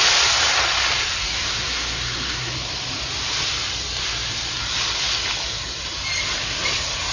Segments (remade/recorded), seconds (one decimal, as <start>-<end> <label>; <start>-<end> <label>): 0.0-1.4 recorded; 1.4-2.5 remade; 2.5-7.1 recorded